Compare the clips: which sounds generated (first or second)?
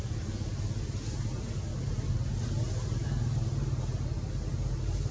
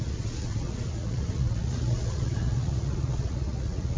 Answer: second